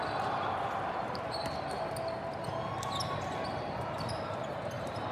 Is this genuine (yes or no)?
yes